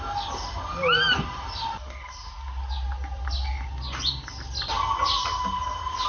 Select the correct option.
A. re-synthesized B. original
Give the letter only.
B